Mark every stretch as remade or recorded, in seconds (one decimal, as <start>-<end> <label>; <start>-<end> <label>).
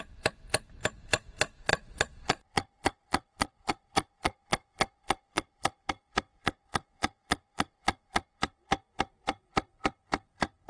0.0-1.7 recorded; 1.7-5.9 remade; 5.9-6.4 recorded; 6.4-8.4 remade; 8.4-10.7 recorded